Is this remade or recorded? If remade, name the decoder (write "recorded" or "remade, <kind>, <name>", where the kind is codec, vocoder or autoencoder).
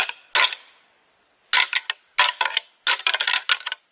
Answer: recorded